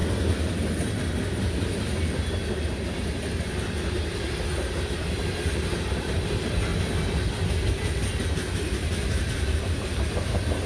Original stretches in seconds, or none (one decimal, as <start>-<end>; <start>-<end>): 0.0-4.9; 6.7-8.3